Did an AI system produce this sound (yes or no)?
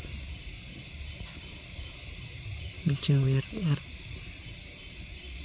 yes